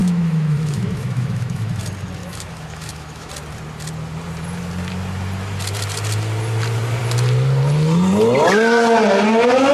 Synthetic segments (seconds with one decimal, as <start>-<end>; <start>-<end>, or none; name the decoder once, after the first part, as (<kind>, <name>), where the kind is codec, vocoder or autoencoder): 0.0-1.8 (autoencoder, DAC-VAE); 2.2-3.3